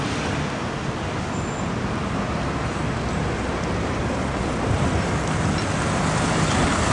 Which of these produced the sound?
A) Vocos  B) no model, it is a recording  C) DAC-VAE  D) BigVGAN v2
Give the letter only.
B